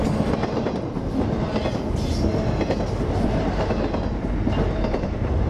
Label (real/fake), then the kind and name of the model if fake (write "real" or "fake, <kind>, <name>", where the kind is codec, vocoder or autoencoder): real